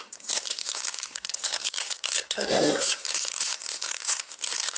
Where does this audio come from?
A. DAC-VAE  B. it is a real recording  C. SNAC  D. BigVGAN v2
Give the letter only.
C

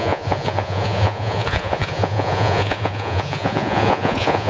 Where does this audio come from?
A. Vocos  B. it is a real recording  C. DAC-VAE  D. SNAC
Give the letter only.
A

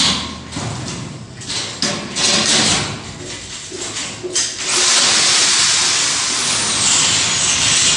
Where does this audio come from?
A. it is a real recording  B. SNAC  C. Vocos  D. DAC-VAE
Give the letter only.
A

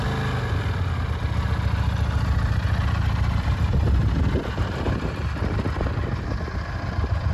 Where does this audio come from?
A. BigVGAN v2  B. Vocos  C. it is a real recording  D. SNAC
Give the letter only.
C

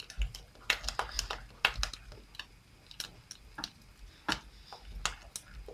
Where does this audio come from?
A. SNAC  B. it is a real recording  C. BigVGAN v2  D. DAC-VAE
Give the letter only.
B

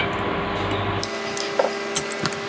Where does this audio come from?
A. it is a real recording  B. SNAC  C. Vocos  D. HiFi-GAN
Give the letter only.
A